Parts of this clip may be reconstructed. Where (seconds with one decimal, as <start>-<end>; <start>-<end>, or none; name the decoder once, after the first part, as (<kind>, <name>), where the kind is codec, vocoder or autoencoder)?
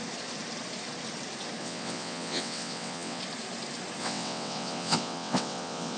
1.6-3.2 (vocoder, WaveNeXt); 4.0-6.0